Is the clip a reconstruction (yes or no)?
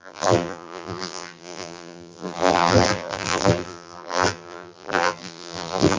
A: yes